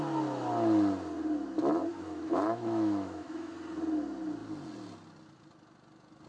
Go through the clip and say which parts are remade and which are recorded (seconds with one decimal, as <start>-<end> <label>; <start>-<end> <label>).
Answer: 0.0-1.9 recorded; 1.9-3.5 remade; 3.5-6.3 recorded